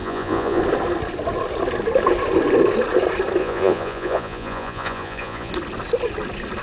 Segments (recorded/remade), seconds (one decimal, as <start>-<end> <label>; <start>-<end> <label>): 0.0-0.6 remade; 0.6-3.4 recorded; 3.4-5.5 remade; 5.5-6.6 recorded